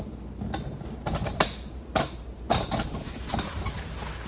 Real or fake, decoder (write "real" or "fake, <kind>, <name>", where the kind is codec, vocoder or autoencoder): real